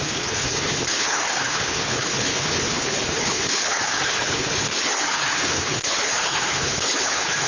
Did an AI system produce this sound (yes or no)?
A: yes